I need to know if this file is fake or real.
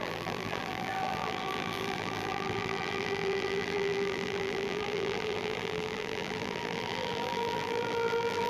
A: fake